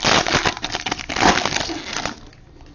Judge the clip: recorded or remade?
recorded